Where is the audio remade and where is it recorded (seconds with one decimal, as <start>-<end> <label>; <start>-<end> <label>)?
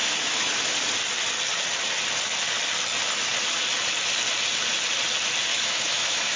0.0-0.7 remade; 0.7-5.5 recorded; 5.5-6.4 remade